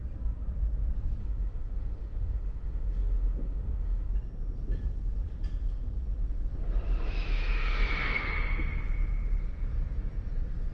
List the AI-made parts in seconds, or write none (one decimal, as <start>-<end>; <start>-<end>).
1.2-4.1; 7.4-8.3